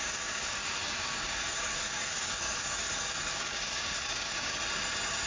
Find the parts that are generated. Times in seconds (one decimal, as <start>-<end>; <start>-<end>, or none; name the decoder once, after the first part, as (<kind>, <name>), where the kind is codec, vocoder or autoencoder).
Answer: 0.0-4.6 (codec, DAC)